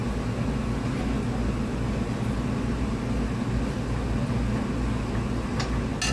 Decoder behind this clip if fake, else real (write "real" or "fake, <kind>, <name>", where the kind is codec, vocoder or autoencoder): real